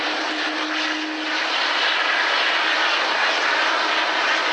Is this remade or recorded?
recorded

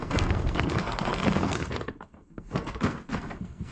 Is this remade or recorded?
remade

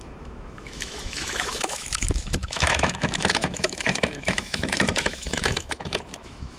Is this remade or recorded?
remade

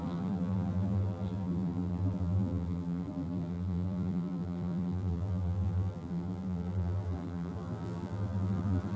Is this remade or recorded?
remade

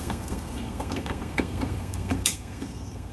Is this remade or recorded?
remade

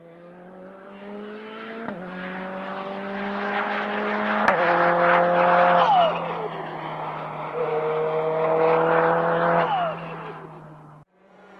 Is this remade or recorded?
recorded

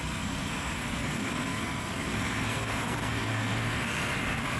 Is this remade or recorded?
remade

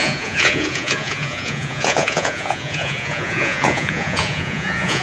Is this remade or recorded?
remade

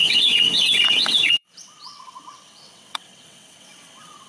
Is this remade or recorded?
remade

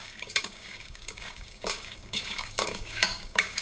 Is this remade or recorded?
remade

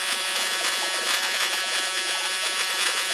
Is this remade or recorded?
remade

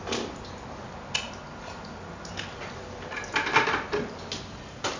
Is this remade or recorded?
recorded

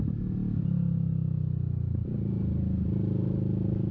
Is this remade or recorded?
recorded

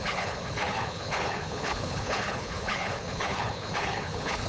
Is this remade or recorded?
remade